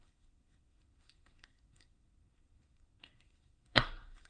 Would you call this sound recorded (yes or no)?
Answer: no